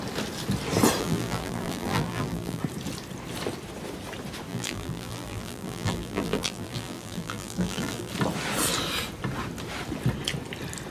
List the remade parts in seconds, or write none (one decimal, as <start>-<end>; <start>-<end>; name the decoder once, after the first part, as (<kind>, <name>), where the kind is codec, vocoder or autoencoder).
1.0-2.6 (vocoder, BigVGAN v2); 4.5-8.1